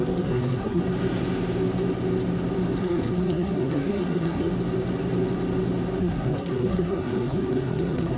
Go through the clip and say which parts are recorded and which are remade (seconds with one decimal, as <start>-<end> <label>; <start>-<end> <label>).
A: 0.0-0.8 remade; 0.8-2.8 recorded; 2.8-4.5 remade; 4.5-6.0 recorded; 6.0-8.2 remade